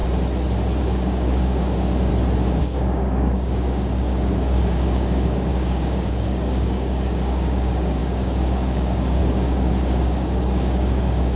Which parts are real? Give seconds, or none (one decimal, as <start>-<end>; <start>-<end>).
0.0-0.8; 2.1-2.6